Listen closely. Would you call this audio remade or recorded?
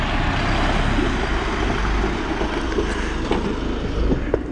recorded